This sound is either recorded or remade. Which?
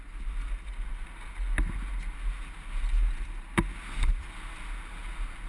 recorded